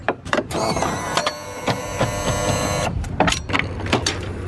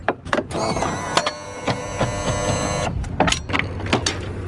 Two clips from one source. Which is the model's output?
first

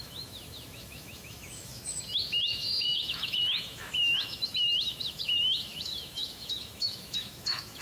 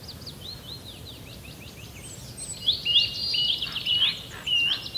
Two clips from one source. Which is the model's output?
first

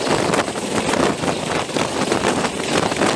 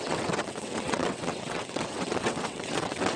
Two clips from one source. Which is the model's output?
second